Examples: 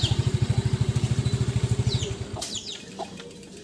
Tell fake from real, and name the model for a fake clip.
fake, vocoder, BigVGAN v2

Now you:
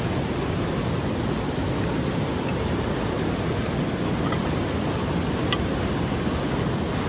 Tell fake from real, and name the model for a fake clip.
real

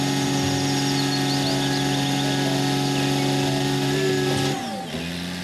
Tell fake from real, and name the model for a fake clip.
real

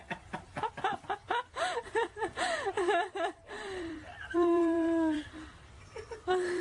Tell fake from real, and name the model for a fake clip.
fake, vocoder, BigVGAN v2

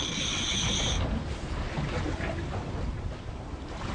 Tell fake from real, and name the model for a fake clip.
fake, vocoder, BigVGAN v2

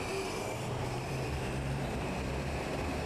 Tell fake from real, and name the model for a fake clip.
fake, vocoder, BigVGAN v2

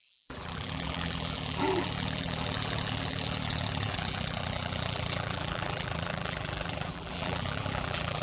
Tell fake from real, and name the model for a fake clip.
fake, vocoder, BigVGAN v2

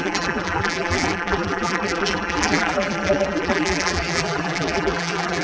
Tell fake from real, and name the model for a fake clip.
fake, vocoder, BigVGAN v2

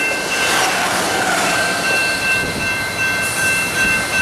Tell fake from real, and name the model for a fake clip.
fake, vocoder, BigVGAN v2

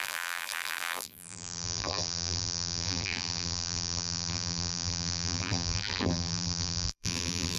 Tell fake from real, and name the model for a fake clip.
fake, vocoder, BigVGAN v2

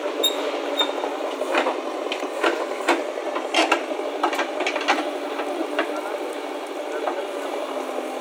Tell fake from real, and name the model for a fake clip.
real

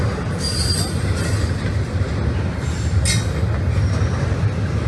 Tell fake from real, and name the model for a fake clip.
real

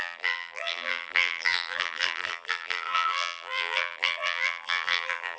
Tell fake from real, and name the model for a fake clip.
fake, vocoder, BigVGAN v2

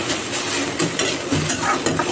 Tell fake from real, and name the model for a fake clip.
real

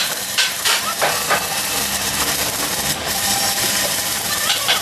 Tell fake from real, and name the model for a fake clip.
fake, vocoder, BigVGAN v2